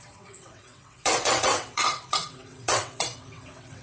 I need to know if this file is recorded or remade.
remade